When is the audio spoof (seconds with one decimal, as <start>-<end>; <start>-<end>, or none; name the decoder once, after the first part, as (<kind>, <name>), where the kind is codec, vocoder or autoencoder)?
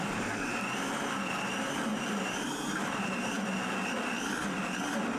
1.9-3.8 (vocoder, BigVGAN v2)